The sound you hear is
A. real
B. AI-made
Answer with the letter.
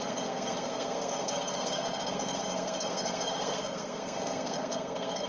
B